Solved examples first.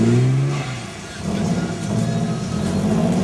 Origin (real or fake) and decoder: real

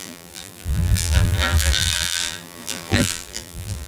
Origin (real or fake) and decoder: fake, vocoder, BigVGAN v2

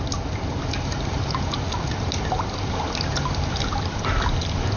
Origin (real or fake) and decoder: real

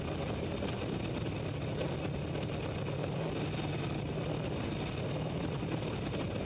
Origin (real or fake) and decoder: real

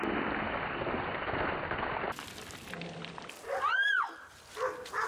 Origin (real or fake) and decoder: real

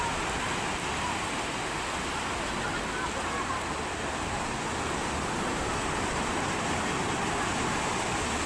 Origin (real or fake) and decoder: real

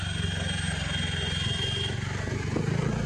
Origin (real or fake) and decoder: real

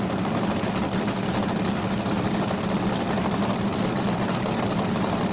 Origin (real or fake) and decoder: real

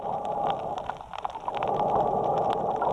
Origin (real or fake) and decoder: real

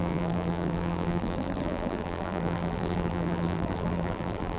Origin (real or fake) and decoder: fake, vocoder, BigVGAN v2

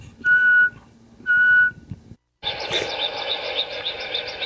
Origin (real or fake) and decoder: real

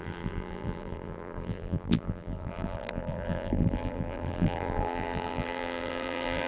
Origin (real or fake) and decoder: fake, vocoder, BigVGAN v2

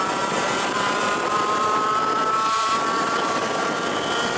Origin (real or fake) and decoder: fake, vocoder, BigVGAN v2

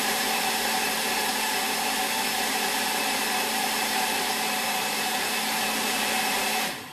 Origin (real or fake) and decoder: fake, vocoder, BigVGAN v2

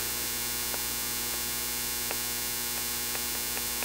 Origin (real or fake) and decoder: real